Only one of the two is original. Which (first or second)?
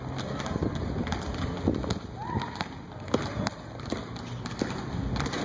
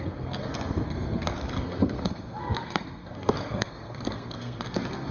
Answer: first